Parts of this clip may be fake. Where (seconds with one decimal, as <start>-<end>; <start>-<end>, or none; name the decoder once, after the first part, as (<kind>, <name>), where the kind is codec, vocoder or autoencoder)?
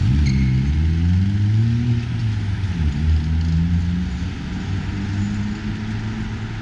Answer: none